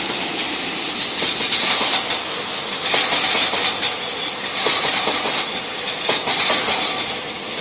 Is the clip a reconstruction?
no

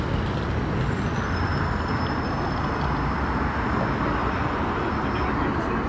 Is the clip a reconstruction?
no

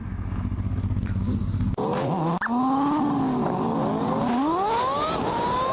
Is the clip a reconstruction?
no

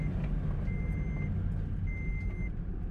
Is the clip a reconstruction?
no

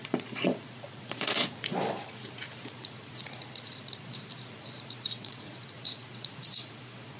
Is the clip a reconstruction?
yes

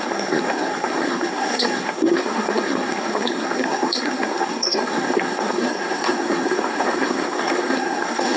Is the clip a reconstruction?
yes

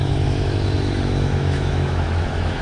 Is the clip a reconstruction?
yes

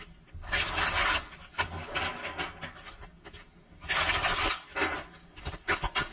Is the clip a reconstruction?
no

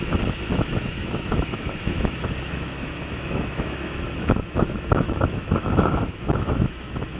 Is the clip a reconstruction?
yes